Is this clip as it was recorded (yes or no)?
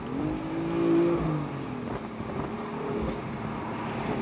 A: yes